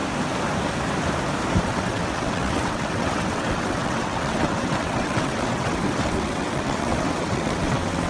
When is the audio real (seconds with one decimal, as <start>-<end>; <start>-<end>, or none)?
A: 0.0-1.6

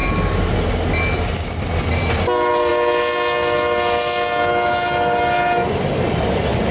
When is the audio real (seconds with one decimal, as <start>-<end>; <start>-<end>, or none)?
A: 0.0-6.7

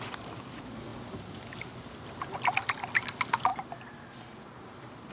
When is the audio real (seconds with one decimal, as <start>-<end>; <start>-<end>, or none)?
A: 0.0-5.1